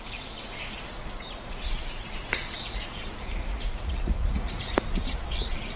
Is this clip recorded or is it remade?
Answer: remade